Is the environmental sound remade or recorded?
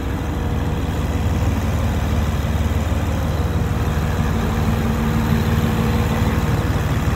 recorded